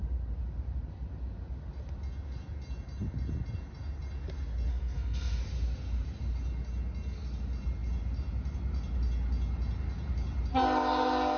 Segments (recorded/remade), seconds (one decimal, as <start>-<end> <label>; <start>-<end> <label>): 0.0-4.7 recorded; 4.7-5.4 remade; 5.4-11.4 recorded